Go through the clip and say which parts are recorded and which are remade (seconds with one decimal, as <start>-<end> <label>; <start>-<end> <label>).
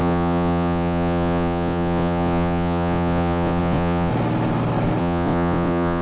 0.0-4.1 remade; 4.1-5.0 recorded; 5.0-6.0 remade